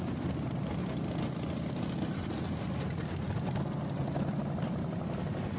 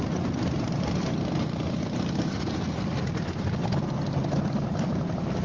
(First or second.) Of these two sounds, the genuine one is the first